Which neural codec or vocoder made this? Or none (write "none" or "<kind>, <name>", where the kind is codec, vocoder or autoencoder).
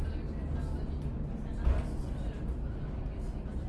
none